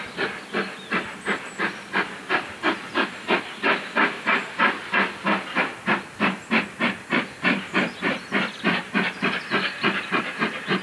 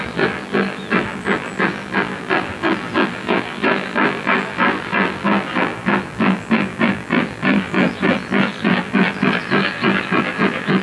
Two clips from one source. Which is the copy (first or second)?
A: second